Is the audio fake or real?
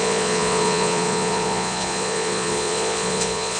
fake